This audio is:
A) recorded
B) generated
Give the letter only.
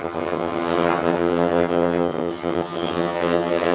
B